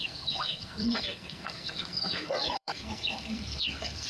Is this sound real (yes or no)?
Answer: no